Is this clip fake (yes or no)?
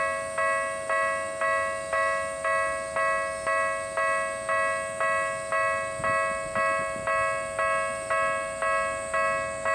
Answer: no